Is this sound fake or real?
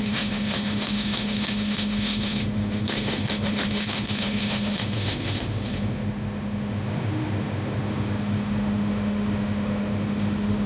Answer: fake